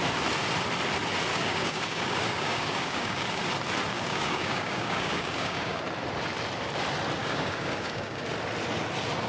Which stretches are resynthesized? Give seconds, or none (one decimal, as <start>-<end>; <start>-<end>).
1.3-3.4; 3.9-5.8; 7.2-8.2